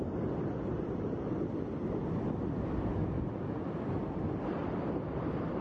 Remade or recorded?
recorded